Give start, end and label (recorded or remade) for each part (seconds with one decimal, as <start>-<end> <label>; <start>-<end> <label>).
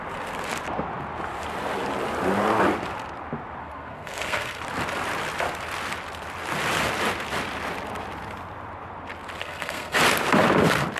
0.0-3.6 recorded; 3.6-4.6 remade; 4.6-9.4 recorded; 9.4-10.0 remade; 10.0-11.0 recorded